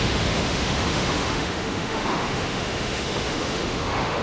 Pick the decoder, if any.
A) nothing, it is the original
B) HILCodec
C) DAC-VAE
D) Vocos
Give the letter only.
C